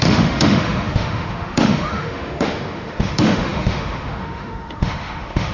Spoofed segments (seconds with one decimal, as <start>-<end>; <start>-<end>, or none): 0.0-5.5